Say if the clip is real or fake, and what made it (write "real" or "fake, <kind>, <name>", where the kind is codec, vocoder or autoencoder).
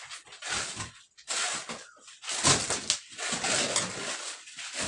real